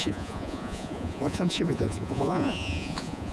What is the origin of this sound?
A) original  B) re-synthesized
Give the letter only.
B